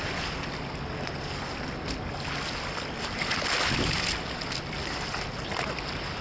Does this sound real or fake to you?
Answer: real